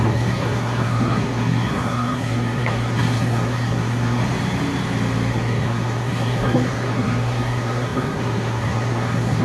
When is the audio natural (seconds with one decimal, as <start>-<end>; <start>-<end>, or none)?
4.2-5.3